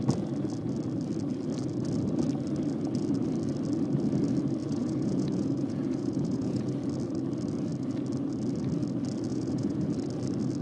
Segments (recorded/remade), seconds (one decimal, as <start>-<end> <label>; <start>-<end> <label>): 0.0-4.6 recorded; 4.6-6.7 remade; 6.7-9.3 recorded; 9.3-9.9 remade; 9.9-10.6 recorded